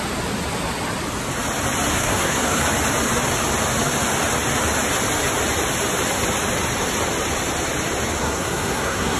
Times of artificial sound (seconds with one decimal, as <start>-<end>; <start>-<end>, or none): 1.9-2.6; 8.2-9.2